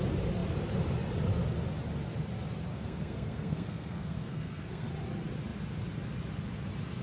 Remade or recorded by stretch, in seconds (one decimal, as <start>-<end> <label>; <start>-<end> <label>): 0.0-2.7 recorded; 2.7-4.9 remade; 4.9-7.0 recorded